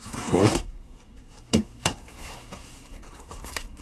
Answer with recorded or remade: remade